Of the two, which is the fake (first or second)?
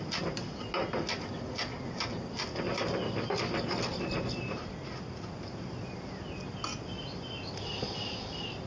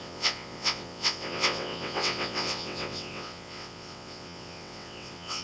second